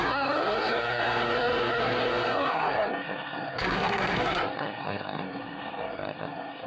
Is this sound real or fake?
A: fake